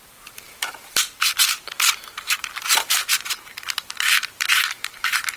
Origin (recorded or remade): remade